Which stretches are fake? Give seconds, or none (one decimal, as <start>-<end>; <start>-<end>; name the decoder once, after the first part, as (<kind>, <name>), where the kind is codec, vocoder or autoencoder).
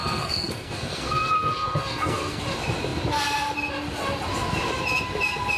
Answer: 0.0-2.4 (codec, SNAC)